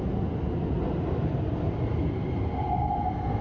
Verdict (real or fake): real